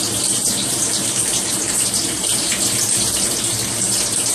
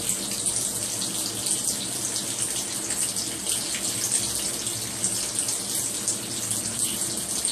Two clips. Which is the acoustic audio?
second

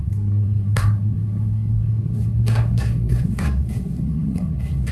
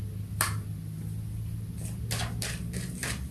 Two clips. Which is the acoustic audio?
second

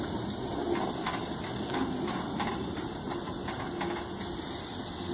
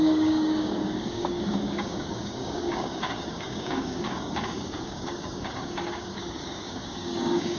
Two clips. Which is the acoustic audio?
first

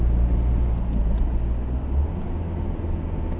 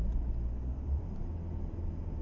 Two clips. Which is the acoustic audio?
first